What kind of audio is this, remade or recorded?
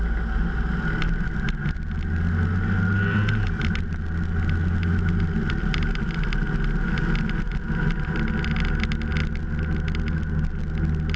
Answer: recorded